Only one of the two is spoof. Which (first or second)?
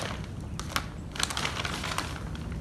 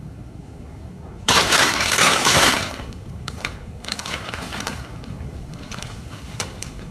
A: second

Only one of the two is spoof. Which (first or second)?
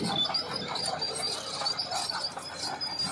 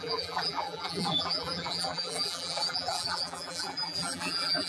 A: second